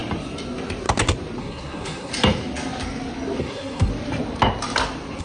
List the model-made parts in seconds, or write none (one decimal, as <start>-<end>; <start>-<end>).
1.4-2.1; 3.4-3.9